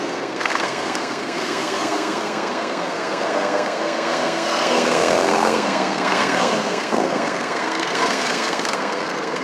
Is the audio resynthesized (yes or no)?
yes